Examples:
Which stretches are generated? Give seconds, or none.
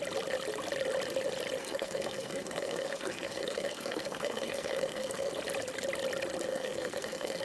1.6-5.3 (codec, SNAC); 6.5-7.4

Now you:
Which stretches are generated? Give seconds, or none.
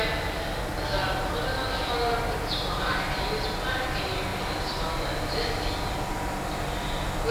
none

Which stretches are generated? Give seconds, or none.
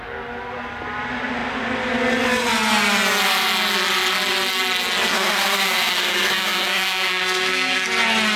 5.1-7.9 (codec, SNAC)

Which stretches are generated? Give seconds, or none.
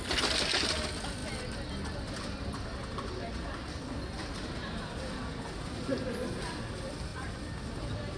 none